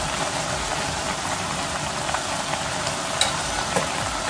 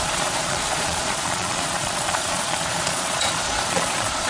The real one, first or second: first